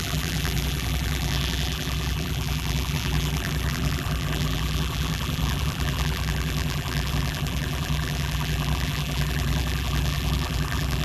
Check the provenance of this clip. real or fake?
fake